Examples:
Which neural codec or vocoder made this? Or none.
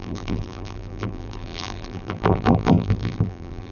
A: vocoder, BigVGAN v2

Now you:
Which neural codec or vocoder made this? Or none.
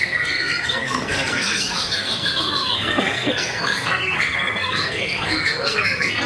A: codec, SNAC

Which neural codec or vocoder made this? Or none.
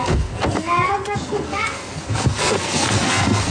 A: codec, SNAC